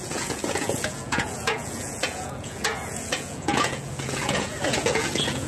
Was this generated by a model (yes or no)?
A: yes